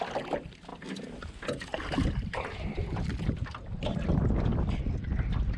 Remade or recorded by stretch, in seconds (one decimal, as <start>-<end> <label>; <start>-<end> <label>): 0.0-5.6 recorded